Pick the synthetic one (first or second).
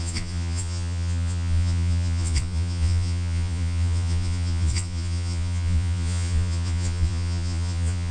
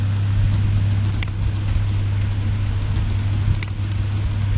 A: first